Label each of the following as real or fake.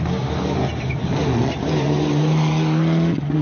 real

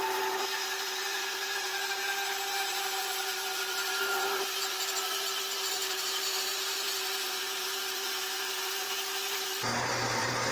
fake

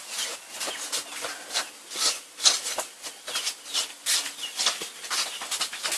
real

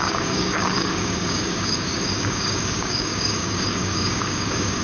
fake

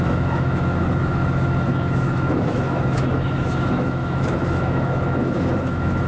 fake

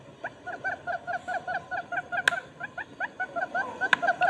real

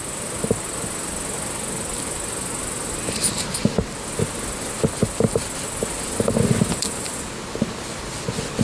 real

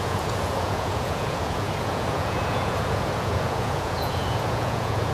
fake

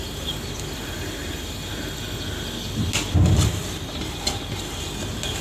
real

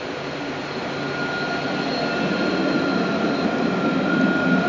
real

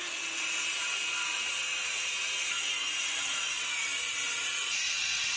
fake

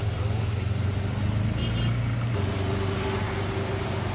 real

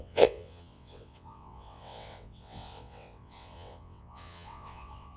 fake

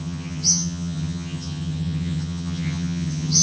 fake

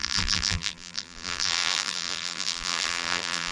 fake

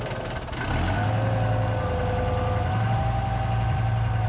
real